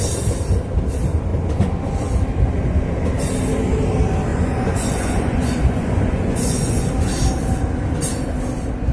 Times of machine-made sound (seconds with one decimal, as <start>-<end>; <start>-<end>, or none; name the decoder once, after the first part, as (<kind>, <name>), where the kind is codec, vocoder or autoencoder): 4.3-6.9 (vocoder, Vocos)

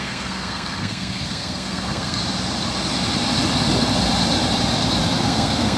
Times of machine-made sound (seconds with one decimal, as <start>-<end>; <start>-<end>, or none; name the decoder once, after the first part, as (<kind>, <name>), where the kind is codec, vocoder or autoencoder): 0.0-2.2 (codec, SNAC); 5.2-5.8